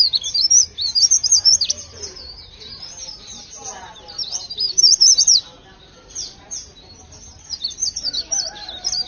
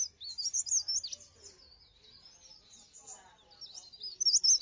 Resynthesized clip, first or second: first